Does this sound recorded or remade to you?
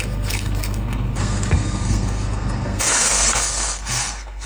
remade